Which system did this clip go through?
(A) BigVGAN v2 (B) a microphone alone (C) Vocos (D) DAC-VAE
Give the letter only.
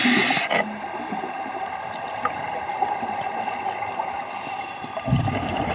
A